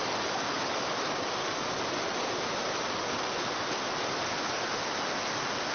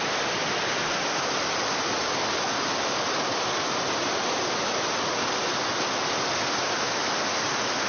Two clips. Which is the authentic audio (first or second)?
second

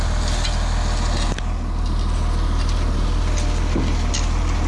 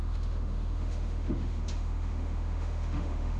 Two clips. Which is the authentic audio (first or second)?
first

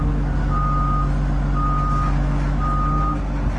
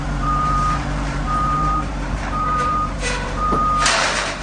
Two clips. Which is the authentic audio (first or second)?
first